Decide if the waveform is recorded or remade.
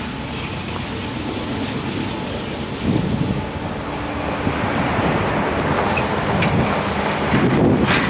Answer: recorded